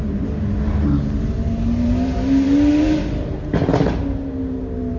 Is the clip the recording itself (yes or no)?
yes